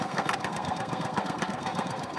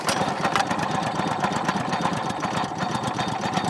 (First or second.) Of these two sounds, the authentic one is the second